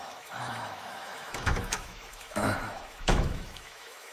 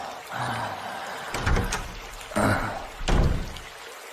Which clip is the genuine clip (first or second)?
second